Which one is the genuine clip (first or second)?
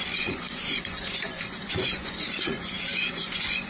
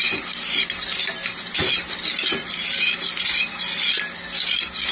second